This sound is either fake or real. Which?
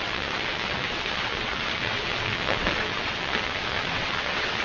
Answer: fake